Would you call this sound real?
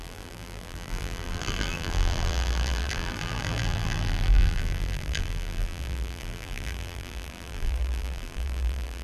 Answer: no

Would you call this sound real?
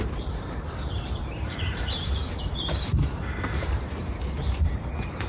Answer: no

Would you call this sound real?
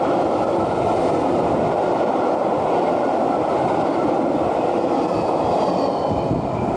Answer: no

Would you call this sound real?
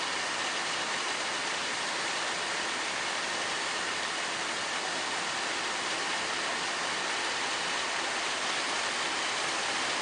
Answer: yes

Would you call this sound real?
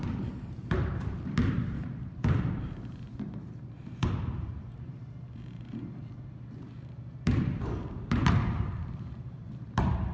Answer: no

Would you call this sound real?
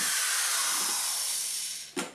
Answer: yes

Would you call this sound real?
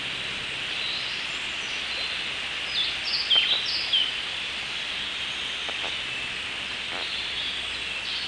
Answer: yes